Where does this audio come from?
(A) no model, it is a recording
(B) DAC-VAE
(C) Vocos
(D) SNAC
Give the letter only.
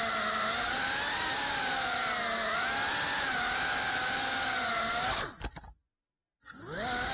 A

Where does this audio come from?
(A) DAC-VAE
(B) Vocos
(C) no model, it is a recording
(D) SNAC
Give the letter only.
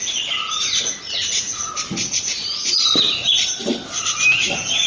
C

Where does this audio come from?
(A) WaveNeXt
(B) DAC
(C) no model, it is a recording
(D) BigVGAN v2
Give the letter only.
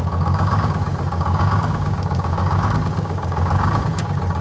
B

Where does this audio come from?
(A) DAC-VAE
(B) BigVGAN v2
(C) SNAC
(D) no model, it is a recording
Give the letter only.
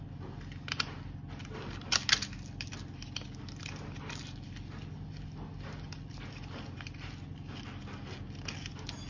D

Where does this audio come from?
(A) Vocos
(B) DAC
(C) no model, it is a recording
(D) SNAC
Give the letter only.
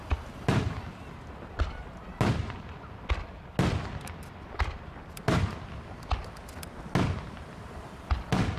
C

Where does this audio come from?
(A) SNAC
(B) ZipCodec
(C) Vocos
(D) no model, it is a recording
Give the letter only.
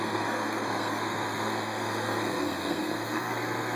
A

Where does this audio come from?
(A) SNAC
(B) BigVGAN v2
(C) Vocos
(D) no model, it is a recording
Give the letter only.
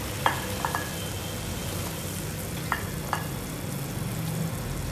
D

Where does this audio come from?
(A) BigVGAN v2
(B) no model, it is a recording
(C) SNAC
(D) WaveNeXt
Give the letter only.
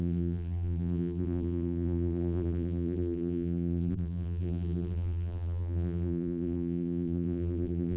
A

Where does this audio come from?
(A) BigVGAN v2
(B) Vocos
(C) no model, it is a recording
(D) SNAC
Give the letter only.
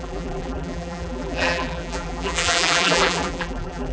A